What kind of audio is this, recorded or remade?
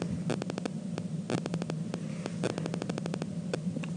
recorded